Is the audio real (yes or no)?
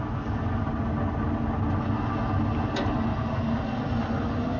yes